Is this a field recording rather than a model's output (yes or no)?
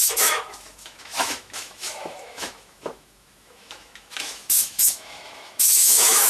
no